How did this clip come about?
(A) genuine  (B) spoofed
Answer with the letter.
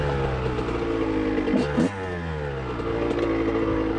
A